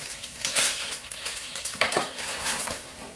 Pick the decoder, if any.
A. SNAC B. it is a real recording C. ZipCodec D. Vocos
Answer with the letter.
A